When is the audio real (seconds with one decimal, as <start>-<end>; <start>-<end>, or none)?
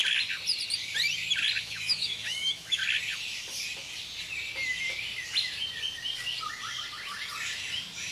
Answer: 0.0-1.6; 2.8-8.1